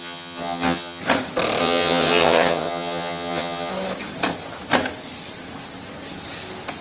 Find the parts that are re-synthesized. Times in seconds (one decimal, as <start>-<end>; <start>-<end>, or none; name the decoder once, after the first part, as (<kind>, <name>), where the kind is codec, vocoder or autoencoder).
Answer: 0.0-1.0 (vocoder, HiFi-GAN); 1.6-3.7